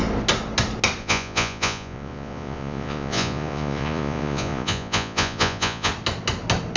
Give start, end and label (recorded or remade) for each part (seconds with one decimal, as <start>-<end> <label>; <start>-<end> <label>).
0.0-1.0 recorded; 1.0-5.9 remade; 5.9-6.8 recorded